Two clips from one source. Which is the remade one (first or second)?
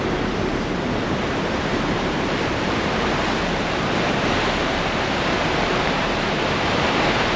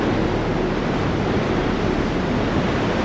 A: first